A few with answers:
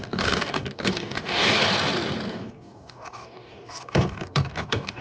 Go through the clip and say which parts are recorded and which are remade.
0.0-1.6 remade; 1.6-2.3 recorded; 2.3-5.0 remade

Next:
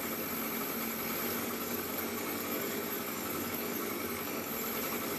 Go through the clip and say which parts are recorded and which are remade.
0.0-1.4 recorded; 1.4-4.5 remade; 4.5-5.2 recorded

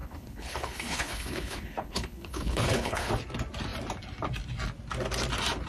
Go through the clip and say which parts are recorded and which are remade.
0.0-3.1 remade; 3.1-5.7 recorded

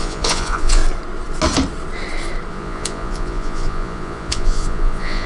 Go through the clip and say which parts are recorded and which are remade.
0.0-0.8 remade; 0.8-2.5 recorded; 2.5-5.3 remade

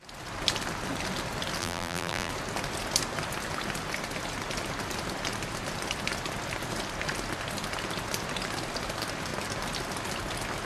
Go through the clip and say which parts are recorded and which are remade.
0.0-1.6 recorded; 1.6-2.3 remade; 2.3-10.7 recorded

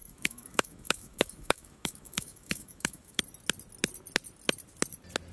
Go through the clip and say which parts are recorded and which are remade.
0.0-3.2 remade; 3.2-5.3 recorded

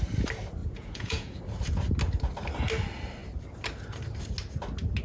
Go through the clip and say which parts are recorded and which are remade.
0.0-0.6 recorded; 0.6-1.4 remade; 1.4-5.0 recorded